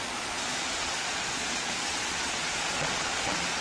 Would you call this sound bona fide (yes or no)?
no